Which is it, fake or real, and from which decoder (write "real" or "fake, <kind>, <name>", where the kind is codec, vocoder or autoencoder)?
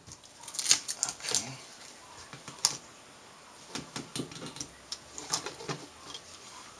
real